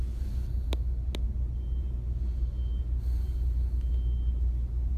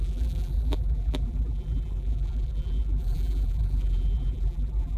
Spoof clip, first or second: second